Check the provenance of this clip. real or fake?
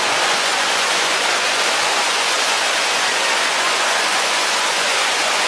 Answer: fake